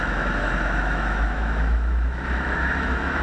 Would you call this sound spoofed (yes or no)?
yes